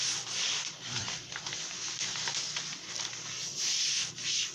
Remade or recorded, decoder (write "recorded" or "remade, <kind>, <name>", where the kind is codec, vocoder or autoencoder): remade, vocoder, BigVGAN v2